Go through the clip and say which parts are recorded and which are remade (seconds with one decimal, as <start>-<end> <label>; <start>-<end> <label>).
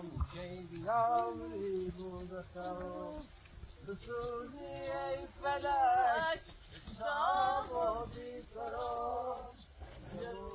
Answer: 0.0-9.1 recorded; 9.1-9.9 remade; 9.9-10.5 recorded